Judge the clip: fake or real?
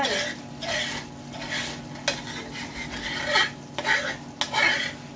real